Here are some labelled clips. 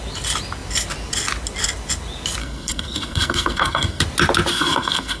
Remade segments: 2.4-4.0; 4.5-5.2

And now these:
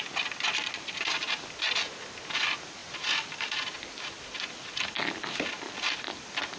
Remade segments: none